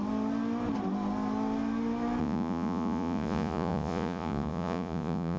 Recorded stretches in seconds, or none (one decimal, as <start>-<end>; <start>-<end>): 0.0-2.2